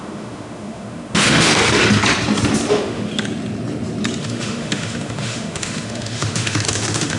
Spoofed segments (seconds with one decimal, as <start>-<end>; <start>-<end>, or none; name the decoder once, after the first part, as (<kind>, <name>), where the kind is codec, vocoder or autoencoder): 0.0-1.5 (autoencoder, DAC-VAE); 2.7-3.1; 4.2-7.2